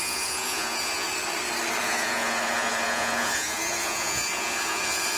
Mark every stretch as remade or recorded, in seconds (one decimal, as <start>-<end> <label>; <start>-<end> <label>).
0.0-1.1 remade; 1.1-1.8 recorded; 1.8-5.2 remade